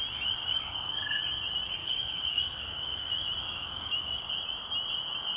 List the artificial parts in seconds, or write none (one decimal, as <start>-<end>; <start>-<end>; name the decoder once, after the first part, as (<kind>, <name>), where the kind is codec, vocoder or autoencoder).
0.4-1.2 (codec, DAC); 1.8-4.3